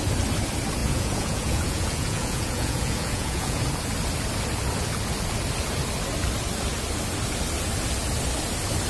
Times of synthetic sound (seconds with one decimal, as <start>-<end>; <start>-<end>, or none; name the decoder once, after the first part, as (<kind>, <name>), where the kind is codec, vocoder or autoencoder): 0.8-3.7 (vocoder, Vocos)